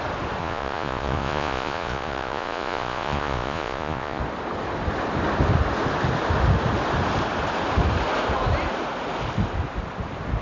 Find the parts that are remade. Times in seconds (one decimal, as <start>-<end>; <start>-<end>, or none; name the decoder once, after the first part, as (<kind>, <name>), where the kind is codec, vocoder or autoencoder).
0.4-4.2 (vocoder, Vocos)